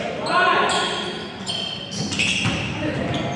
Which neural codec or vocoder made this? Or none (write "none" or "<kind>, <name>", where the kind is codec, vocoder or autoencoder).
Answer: none